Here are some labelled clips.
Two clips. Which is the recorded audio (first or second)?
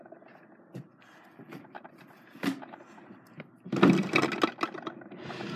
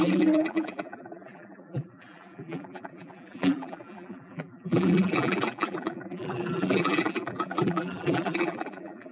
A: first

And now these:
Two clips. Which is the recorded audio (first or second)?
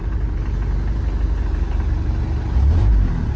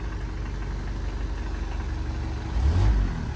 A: second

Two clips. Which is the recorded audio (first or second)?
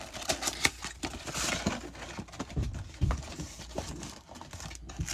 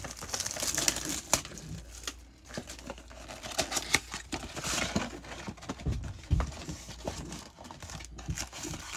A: second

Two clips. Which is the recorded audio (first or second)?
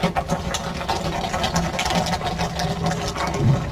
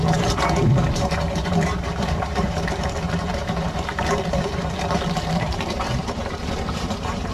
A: first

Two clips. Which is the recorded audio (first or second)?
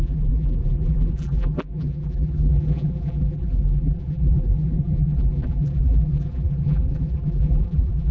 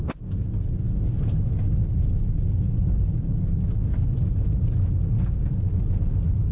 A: second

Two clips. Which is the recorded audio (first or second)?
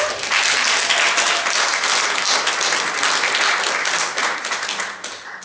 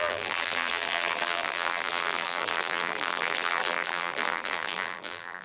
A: first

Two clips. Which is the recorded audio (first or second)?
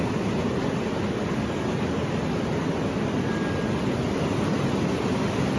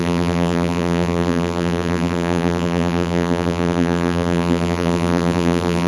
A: first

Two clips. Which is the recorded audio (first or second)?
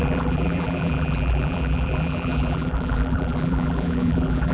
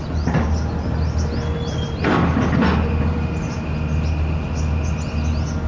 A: second